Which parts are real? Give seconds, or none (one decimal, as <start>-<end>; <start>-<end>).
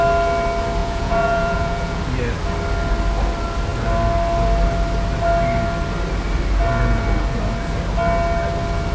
0.0-0.8; 2.0-8.9